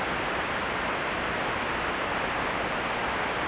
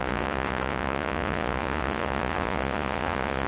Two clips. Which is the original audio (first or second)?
first